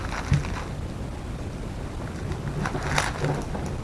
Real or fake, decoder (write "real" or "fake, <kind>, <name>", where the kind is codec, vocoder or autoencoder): real